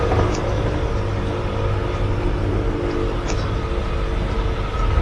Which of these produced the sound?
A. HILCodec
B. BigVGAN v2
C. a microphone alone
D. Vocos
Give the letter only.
C